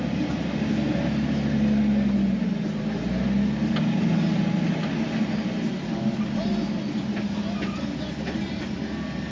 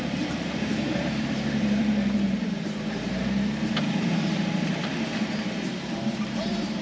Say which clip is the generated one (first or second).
second